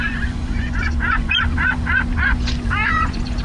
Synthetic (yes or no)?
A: yes